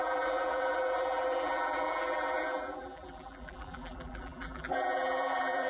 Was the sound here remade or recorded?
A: remade